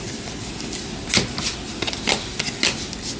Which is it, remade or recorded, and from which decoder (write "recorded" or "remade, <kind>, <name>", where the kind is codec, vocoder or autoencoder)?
recorded